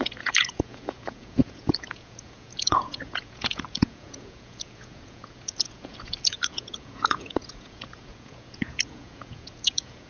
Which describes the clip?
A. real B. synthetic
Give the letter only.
B